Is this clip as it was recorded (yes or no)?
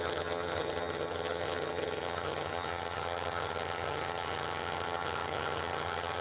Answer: no